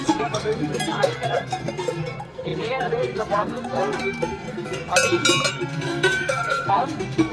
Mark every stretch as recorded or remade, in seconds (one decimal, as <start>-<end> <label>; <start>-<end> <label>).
0.0-4.9 remade; 4.9-5.5 recorded; 5.5-7.3 remade